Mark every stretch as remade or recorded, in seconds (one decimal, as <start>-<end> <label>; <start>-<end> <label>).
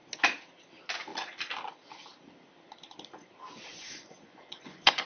0.0-3.7 recorded; 3.7-5.1 remade